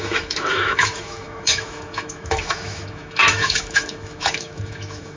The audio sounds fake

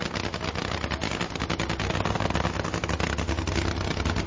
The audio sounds real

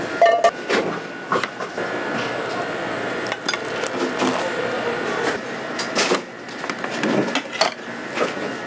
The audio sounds real